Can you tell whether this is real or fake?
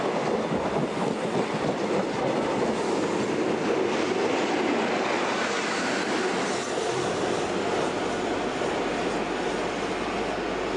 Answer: real